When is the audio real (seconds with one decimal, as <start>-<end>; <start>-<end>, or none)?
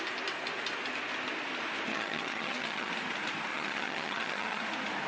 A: 0.0-1.9; 2.9-3.5; 4.6-5.1